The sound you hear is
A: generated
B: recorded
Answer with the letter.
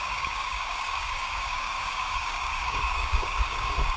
A